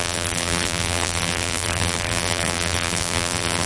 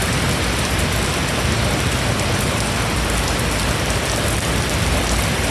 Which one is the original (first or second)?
second